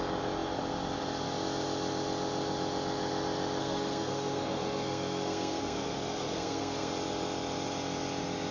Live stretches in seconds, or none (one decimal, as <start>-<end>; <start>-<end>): 0.0-3.6; 6.9-8.5